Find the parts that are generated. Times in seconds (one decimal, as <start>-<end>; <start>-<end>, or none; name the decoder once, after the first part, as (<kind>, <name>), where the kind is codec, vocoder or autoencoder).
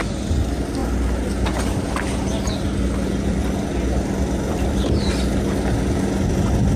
3.3-5.4 (vocoder, BigVGAN v2)